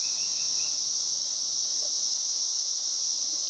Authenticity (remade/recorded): remade